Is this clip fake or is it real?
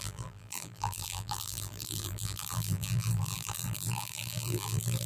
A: fake